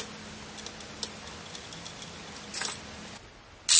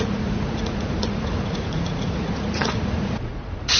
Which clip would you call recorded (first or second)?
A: first